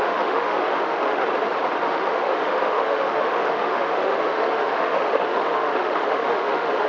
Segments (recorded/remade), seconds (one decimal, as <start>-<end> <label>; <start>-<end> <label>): 0.0-1.2 remade; 1.2-1.8 recorded; 1.8-6.9 remade